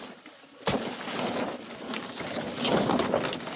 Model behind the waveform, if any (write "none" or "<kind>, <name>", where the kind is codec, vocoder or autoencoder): none